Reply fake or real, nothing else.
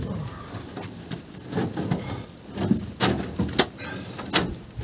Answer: real